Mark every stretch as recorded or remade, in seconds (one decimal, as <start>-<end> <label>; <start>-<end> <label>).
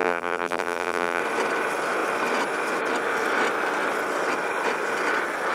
0.0-1.2 remade; 1.2-5.5 recorded